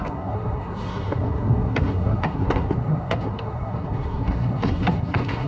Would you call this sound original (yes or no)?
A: no